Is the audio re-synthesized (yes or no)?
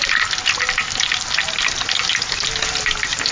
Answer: no